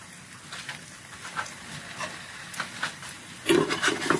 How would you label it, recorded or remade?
remade